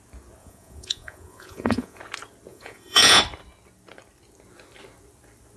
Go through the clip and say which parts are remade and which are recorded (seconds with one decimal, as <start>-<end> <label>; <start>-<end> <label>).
0.0-0.4 recorded; 0.4-2.0 remade; 2.0-2.5 recorded; 2.5-3.2 remade; 3.2-5.6 recorded